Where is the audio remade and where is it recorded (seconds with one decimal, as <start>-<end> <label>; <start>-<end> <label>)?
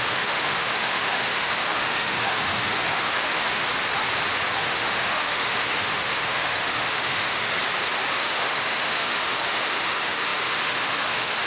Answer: 0.0-3.6 remade; 3.6-4.6 recorded; 4.6-7.5 remade; 7.5-8.1 recorded; 8.1-11.5 remade